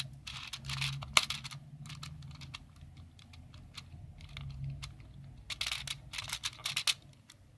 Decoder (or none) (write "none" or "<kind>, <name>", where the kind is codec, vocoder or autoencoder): none